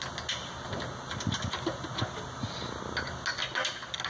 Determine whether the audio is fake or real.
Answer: real